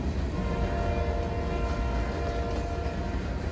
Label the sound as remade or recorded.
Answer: recorded